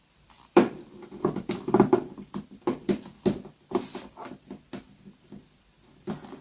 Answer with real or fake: fake